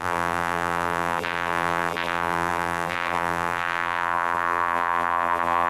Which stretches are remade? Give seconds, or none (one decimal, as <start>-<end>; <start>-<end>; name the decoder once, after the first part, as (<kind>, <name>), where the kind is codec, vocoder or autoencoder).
0.0-5.7 (vocoder, BigVGAN v2)